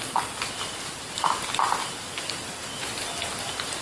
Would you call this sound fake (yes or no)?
no